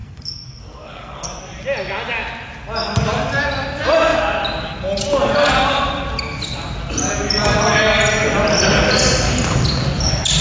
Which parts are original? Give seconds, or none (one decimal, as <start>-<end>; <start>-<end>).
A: 1.5-10.4